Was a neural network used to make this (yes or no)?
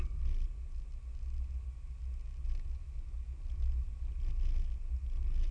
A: no